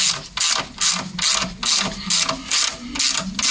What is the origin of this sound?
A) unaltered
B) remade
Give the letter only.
A